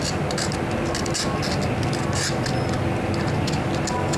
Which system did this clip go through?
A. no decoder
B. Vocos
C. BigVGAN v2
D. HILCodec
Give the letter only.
A